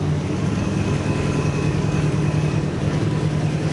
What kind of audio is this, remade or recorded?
remade